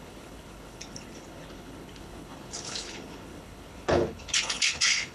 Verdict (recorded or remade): remade